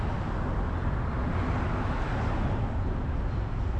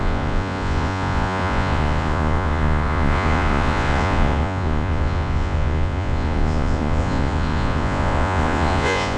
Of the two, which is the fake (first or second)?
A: second